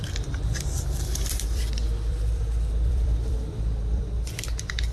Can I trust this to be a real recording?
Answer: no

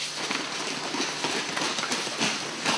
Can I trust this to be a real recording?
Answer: no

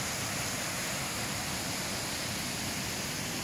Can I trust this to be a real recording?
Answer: yes